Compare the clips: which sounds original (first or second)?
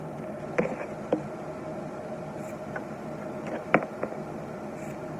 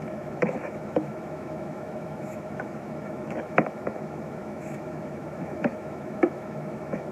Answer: first